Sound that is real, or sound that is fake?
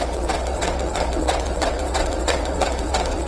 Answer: fake